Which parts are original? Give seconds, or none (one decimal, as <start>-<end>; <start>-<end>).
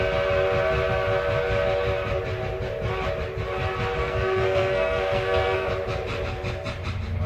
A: 0.0-4.0; 5.7-7.3